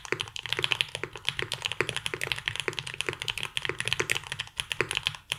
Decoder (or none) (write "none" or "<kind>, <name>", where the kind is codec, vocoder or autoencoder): none